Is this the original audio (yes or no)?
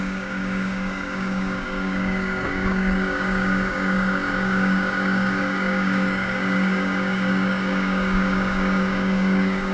no